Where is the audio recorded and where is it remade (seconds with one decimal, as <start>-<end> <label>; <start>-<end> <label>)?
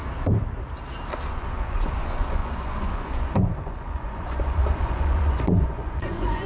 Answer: 0.0-1.3 recorded; 1.3-6.5 remade